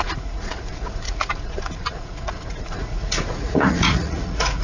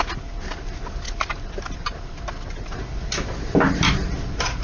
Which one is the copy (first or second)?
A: first